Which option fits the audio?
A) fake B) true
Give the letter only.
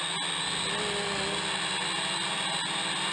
B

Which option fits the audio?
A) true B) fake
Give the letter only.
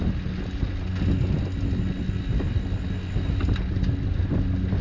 A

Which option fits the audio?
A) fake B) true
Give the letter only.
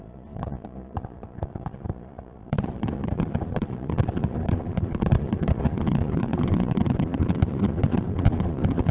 A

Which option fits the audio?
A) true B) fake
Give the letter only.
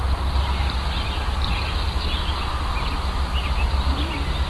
A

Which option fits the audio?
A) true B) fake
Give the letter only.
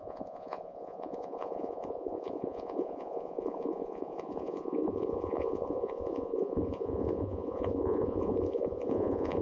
B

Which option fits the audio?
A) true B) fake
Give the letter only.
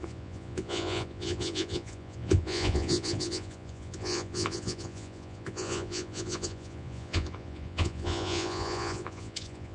B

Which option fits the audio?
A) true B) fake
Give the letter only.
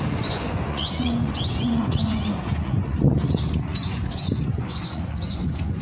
B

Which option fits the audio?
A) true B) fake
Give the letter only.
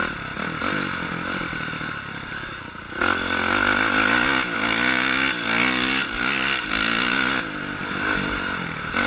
A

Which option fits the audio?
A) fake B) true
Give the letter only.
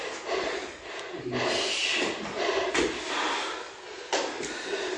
B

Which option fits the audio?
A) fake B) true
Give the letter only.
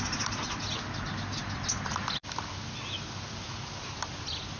B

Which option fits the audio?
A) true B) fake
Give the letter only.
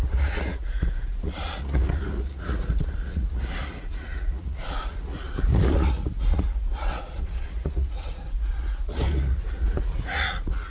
B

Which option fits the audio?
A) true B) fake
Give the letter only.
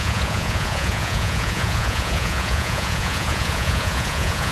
B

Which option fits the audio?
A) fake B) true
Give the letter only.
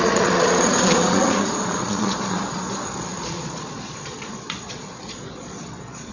A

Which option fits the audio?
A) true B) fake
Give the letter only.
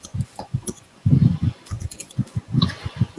B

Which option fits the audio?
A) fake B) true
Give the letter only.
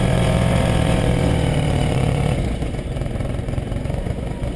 A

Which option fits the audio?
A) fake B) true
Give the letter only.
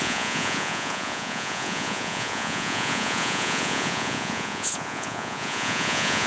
A